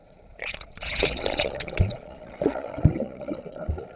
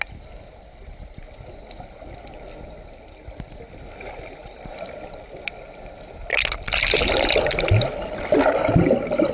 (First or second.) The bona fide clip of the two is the second